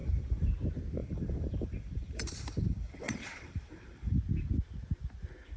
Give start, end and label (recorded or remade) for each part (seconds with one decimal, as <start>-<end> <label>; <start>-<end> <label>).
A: 0.0-0.5 remade; 0.5-1.0 recorded; 1.0-4.2 remade; 4.2-5.6 recorded